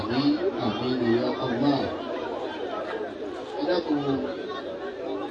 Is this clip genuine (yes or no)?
yes